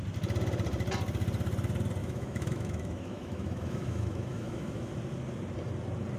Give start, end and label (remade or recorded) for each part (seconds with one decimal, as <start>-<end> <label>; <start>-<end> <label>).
0.0-2.0 recorded; 2.0-4.9 remade; 4.9-6.2 recorded

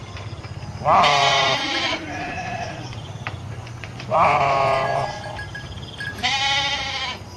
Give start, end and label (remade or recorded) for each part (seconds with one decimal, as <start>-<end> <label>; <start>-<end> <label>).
0.0-1.2 recorded; 1.2-5.2 remade; 5.2-7.4 recorded

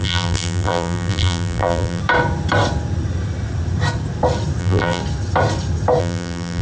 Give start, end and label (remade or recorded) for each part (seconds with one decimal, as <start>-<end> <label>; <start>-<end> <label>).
0.0-2.0 remade; 2.0-4.6 recorded; 4.6-5.0 remade; 5.0-6.0 recorded; 6.0-6.6 remade

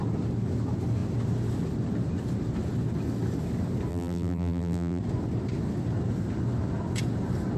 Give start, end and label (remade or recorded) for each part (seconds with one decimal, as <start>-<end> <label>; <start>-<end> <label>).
0.0-3.9 recorded; 3.9-5.0 remade; 5.0-7.6 recorded

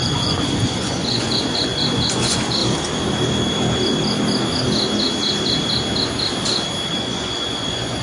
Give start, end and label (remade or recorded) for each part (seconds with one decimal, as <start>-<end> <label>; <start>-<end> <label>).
0.0-2.6 remade; 2.6-6.9 recorded; 6.9-8.0 remade

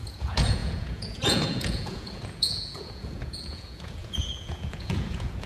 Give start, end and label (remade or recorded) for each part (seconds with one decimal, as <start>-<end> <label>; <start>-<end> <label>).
0.0-5.5 remade

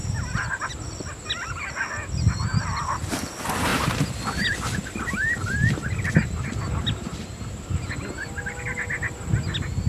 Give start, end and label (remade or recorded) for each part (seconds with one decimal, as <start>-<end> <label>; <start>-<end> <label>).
0.0-0.5 remade; 0.5-9.9 recorded